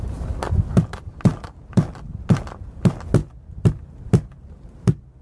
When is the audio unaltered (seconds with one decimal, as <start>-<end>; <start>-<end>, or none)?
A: 0.0-5.2